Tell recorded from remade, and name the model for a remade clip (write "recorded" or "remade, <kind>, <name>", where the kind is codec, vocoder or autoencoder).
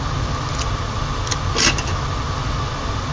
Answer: recorded